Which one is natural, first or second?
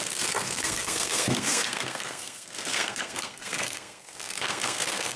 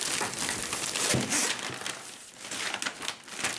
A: second